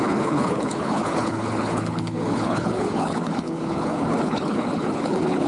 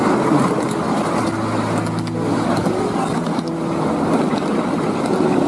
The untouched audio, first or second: second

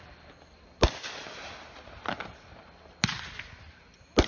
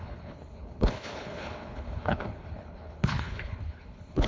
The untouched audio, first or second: first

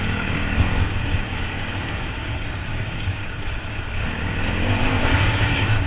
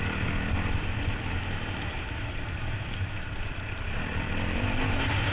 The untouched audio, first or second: second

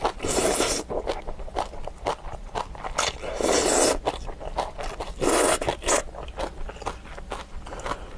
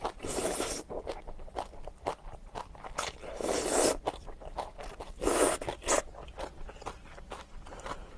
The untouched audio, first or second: first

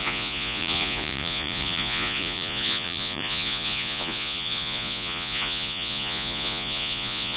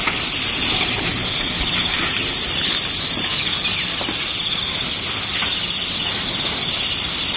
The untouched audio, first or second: second